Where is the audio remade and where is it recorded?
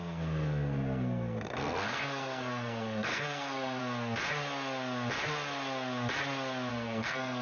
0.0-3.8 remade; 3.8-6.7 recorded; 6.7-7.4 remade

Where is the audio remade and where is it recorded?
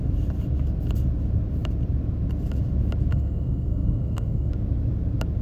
0.0-3.1 recorded; 3.1-4.5 remade; 4.5-5.4 recorded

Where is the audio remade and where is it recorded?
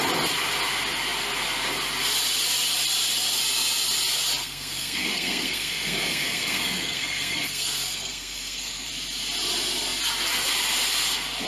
0.0-4.4 recorded; 4.4-8.9 remade; 8.9-11.5 recorded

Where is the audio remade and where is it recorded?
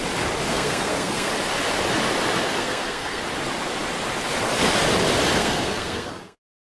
0.0-0.5 recorded; 0.5-1.3 remade; 1.3-2.6 recorded; 2.6-3.2 remade; 3.2-5.4 recorded; 5.4-6.7 remade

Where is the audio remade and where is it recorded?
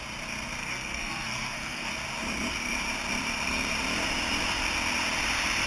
0.0-0.6 recorded; 0.6-1.9 remade; 1.9-5.7 recorded